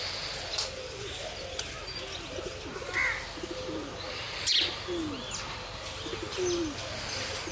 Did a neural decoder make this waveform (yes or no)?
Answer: no